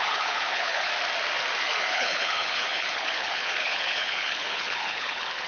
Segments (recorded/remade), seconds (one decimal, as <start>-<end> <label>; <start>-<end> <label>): 0.0-0.9 remade; 0.9-1.6 recorded; 1.6-5.5 remade